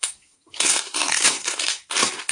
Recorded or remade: remade